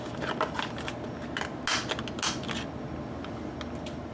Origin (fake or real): real